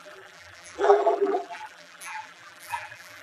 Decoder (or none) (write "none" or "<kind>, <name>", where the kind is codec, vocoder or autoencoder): vocoder, BigVGAN v2